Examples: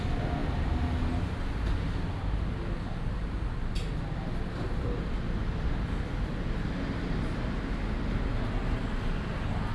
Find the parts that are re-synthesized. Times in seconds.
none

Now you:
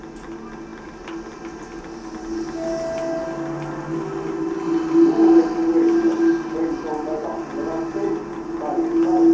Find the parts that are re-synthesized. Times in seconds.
none

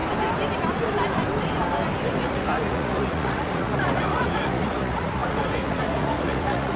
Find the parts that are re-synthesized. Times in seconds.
2.1-6.8 (vocoder, Vocos)